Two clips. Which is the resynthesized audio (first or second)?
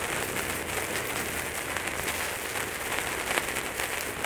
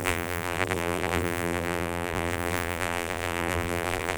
second